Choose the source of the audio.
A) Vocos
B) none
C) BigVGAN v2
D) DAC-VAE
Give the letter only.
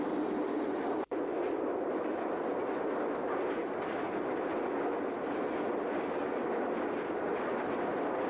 B